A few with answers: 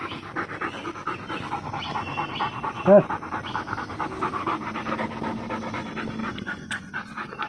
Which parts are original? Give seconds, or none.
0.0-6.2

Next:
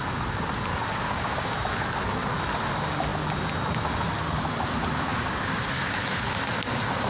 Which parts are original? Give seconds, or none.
0.0-0.7; 1.5-5.1; 6.0-7.1

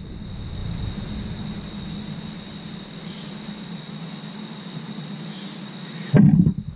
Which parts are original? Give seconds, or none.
0.0-6.8

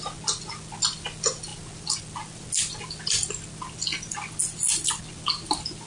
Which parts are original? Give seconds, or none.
0.0-5.9

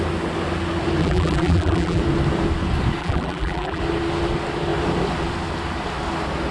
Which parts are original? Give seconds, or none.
0.0-1.0; 2.0-3.0; 3.8-6.5